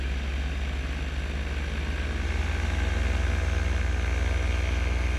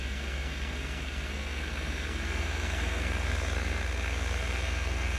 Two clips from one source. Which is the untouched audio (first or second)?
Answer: first